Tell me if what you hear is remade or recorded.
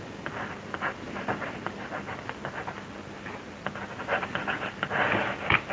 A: recorded